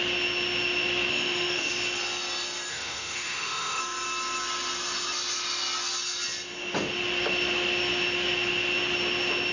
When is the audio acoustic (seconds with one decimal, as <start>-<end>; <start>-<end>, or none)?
0.0-1.1; 1.7-2.7; 3.8-9.5